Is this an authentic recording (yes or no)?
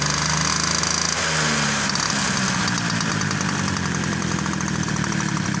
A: yes